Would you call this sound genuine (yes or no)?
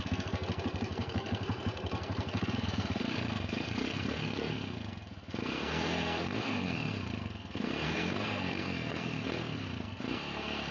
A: no